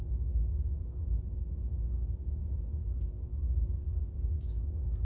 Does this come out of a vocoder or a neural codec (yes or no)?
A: no